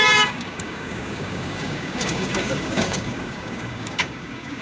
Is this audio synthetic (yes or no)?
yes